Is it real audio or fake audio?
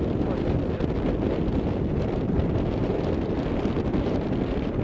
real